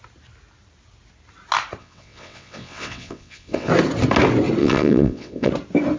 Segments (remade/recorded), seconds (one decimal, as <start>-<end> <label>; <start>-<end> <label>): 0.0-1.8 recorded; 1.8-3.7 remade; 3.7-4.6 recorded; 4.6-5.5 remade; 5.5-6.0 recorded